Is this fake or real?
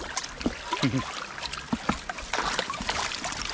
real